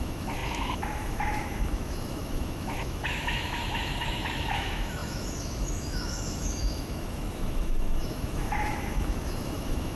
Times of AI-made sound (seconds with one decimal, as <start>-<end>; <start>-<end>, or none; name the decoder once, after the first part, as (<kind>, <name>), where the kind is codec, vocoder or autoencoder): 0.0-10.0 (autoencoder, DAC-VAE)